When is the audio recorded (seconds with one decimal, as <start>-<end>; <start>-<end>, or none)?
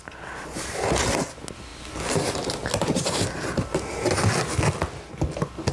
0.0-5.7